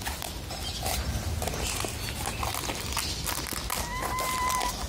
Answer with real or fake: real